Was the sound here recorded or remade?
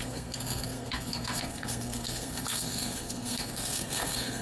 remade